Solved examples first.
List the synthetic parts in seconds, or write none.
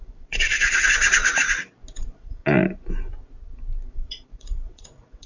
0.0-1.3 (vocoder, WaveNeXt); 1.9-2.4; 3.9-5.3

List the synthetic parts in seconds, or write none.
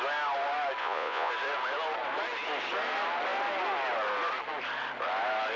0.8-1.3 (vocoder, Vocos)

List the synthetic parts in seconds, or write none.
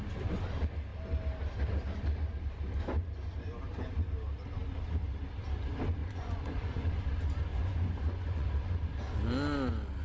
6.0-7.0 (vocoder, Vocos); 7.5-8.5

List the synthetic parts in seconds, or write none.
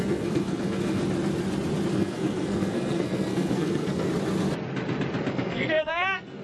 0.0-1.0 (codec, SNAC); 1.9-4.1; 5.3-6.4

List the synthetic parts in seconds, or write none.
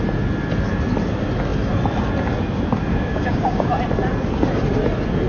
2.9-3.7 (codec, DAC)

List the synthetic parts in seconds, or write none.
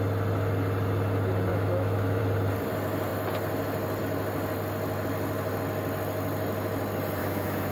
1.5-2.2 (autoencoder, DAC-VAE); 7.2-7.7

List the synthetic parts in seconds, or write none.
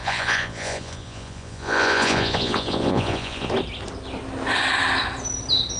0.0-3.5 (vocoder, Vocos)